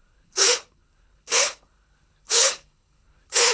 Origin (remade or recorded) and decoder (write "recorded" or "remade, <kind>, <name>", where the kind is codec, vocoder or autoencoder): remade, codec, HILCodec